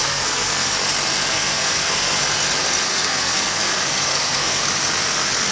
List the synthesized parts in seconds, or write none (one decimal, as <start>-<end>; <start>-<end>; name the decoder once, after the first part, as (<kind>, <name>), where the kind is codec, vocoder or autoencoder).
0.0-0.7 (codec, SNAC); 1.3-2.2; 2.9-4.6